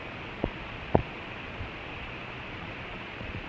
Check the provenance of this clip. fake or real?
fake